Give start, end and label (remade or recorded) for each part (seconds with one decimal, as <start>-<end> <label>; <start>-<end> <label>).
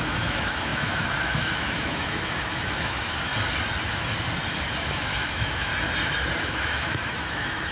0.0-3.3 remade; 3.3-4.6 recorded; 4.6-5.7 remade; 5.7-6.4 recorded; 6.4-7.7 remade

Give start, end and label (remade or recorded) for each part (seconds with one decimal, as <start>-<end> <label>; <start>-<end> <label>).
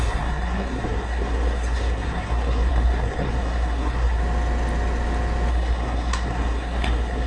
0.0-4.2 remade; 4.2-5.5 recorded; 5.5-7.3 remade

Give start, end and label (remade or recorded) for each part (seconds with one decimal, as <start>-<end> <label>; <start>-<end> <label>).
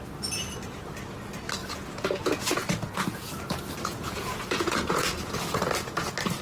0.0-1.6 recorded; 1.6-3.3 remade; 3.3-3.9 recorded; 3.9-5.6 remade; 5.6-6.4 recorded